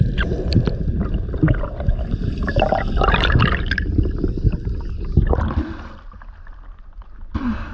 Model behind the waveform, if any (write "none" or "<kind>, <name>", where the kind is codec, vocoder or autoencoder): none